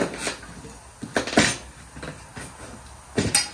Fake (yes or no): no